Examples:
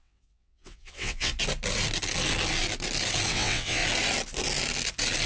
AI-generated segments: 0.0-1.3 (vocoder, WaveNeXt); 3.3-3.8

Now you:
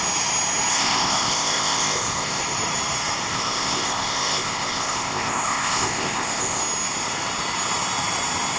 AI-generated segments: 0.7-2.4 (codec, ZipCodec); 3.3-6.6

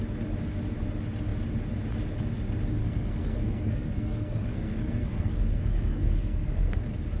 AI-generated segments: 2.8-6.8 (codec, SNAC)

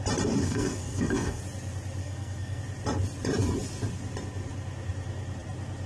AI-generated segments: 0.4-1.4 (codec, SNAC); 2.0-2.6

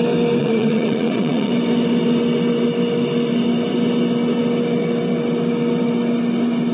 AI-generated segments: 0.4-1.5 (vocoder, Vocos)